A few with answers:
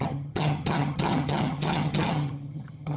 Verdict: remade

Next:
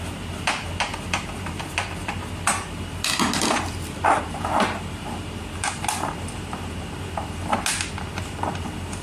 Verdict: recorded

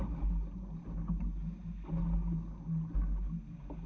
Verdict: recorded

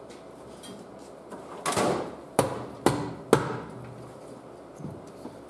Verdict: recorded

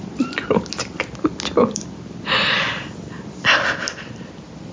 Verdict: recorded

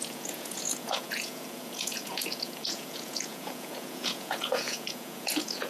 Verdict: remade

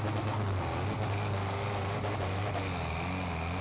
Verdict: recorded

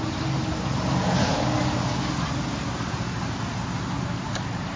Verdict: recorded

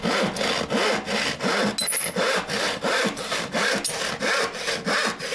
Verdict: recorded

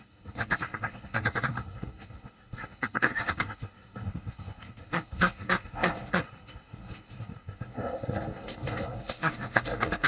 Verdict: remade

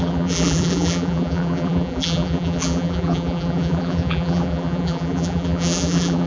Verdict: remade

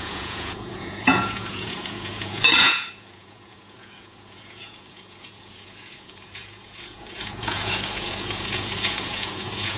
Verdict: remade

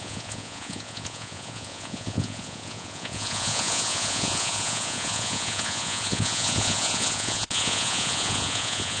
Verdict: remade